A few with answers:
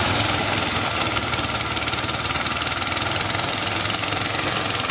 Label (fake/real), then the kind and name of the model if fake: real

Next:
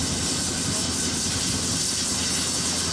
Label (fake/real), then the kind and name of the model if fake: real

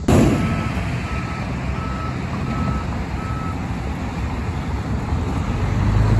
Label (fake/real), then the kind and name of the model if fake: real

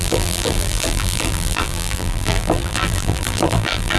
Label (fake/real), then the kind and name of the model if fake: fake, vocoder, BigVGAN v2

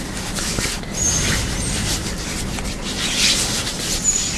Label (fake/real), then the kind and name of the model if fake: real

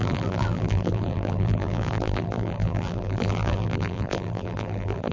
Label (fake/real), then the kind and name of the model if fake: fake, vocoder, BigVGAN v2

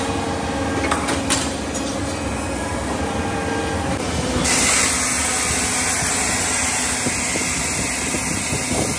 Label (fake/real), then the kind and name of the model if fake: real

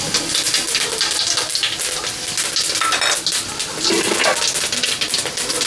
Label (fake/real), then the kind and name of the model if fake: real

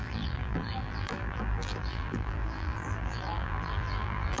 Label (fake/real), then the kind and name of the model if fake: fake, vocoder, BigVGAN v2